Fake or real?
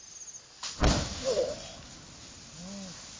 real